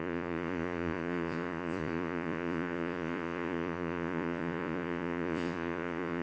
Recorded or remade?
remade